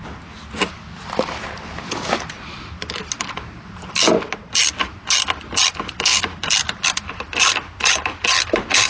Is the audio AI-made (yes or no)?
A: no